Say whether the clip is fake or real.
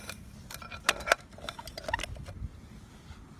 real